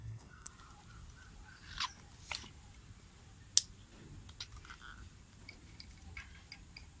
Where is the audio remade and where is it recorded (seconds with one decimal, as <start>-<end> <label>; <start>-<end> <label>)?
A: 0.0-0.5 remade; 0.5-7.0 recorded